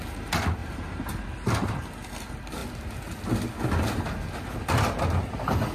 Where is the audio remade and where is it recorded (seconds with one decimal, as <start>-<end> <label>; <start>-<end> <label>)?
0.0-0.6 recorded; 0.6-2.1 remade; 2.1-5.7 recorded